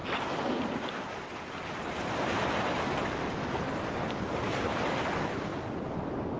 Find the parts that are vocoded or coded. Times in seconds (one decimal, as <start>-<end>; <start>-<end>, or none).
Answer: none